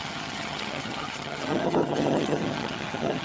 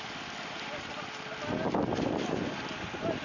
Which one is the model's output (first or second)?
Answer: first